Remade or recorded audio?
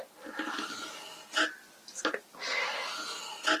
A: recorded